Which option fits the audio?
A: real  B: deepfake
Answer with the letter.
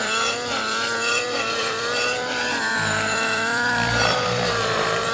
B